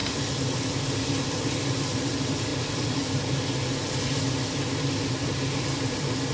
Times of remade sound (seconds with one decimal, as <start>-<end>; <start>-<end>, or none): 2.5-3.0